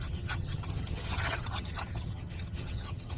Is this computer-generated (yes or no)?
yes